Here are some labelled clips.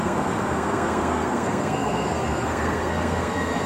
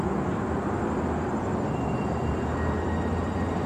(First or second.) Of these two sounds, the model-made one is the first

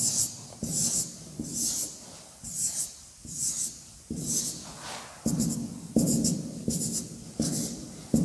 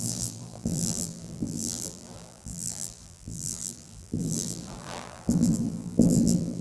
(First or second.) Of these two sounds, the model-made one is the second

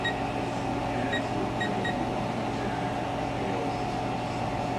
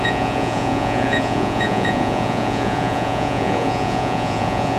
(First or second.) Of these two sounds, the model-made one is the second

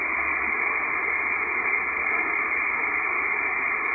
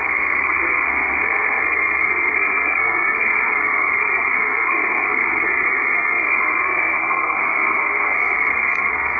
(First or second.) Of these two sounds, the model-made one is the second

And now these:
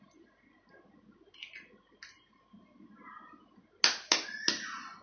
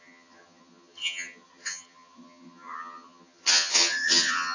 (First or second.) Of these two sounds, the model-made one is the second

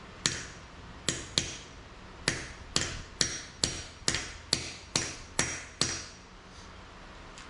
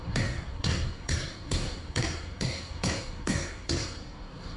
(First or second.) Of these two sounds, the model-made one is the second